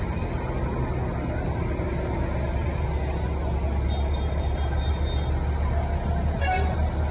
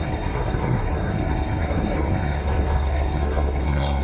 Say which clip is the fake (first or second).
second